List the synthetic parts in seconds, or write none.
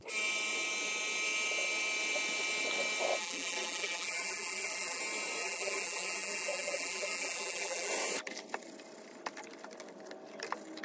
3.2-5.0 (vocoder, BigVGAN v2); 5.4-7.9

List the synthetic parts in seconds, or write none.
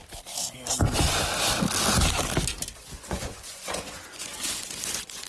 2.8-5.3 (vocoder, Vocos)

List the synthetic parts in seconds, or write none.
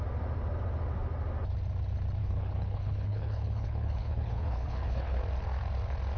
2.2-5.2 (codec, HILCodec)